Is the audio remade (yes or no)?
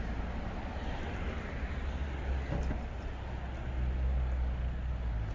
no